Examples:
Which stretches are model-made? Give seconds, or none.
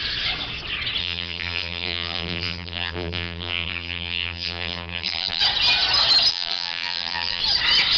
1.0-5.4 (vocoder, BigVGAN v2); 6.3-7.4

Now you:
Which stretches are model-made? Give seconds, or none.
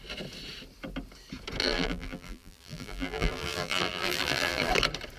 1.6-4.7 (vocoder, BigVGAN v2)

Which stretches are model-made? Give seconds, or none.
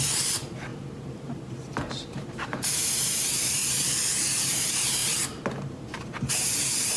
0.0-3.6 (vocoder, BigVGAN v2); 4.4-7.0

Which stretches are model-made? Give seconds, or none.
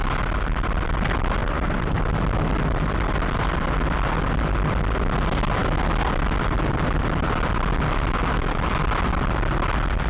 1.4-2.0 (vocoder, BigVGAN v2)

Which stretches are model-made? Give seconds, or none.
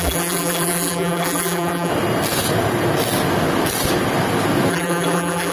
0.0-1.9 (vocoder, BigVGAN v2); 4.7-5.5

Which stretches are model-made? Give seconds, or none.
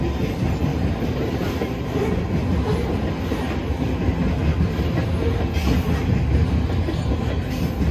0.7-2.0 (vocoder, BigVGAN v2)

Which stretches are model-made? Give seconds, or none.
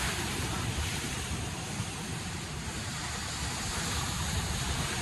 0.0-5.0 (vocoder, BigVGAN v2)